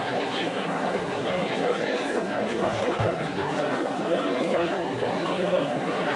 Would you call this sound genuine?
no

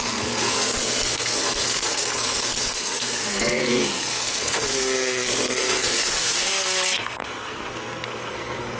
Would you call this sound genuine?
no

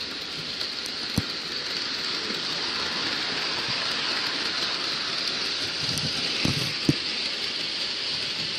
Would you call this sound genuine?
yes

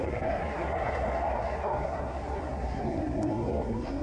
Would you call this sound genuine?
no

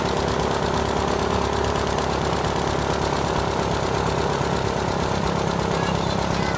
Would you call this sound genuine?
yes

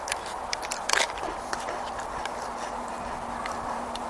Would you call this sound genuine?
yes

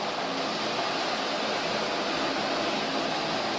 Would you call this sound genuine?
yes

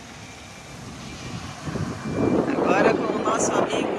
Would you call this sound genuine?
yes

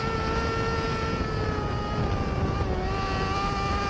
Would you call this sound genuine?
yes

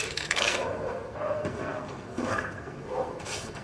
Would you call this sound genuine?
no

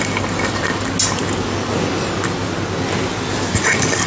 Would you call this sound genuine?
yes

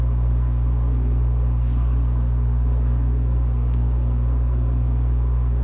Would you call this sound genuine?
no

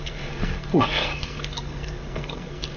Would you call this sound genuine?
no